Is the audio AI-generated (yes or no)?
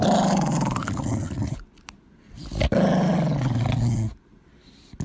no